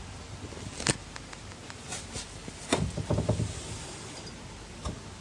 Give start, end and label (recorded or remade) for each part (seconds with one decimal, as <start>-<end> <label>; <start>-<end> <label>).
0.0-1.6 recorded; 1.6-3.3 remade; 3.3-5.2 recorded